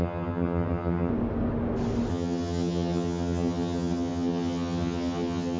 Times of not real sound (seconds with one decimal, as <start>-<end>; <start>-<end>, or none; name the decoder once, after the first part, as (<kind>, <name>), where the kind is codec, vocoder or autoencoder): 0.0-1.1 (vocoder, HiFi-GAN); 2.1-5.6